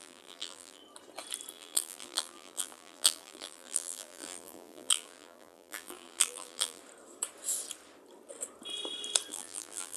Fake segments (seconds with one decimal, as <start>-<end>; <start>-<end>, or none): 0.0-0.8; 1.5-6.8; 9.3-10.0